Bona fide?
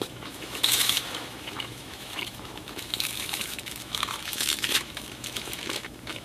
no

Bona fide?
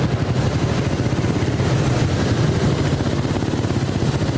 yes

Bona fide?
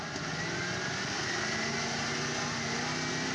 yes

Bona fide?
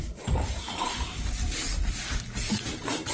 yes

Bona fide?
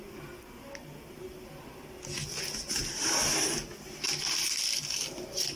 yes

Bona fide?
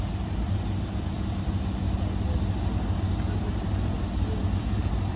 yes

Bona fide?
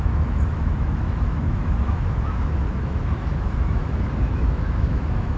no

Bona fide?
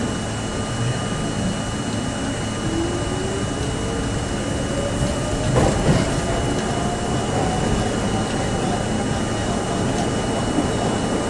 yes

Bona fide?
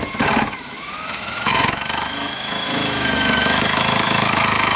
no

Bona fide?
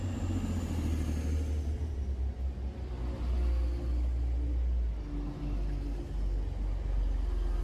yes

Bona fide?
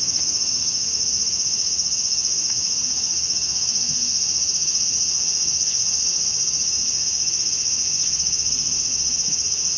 no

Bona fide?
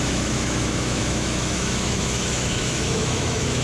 no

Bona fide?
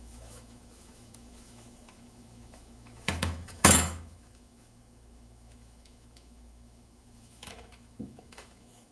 no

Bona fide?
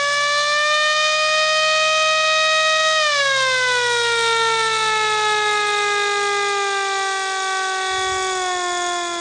yes